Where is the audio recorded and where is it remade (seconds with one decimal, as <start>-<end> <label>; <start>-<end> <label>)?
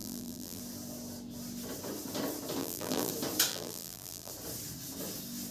0.0-0.6 remade; 0.6-2.6 recorded; 2.6-3.1 remade; 3.1-3.5 recorded; 3.5-4.3 remade; 4.3-5.5 recorded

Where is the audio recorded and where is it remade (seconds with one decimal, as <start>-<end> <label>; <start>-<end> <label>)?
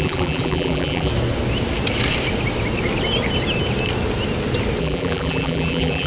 0.0-1.1 remade; 1.1-4.8 recorded; 4.8-6.1 remade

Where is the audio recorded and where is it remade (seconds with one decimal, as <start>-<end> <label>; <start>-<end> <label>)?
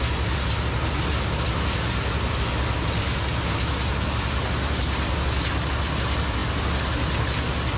0.0-7.8 recorded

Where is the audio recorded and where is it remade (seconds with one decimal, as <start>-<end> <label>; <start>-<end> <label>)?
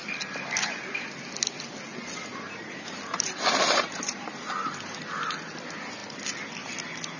0.0-2.3 recorded; 2.3-5.0 remade; 5.0-7.2 recorded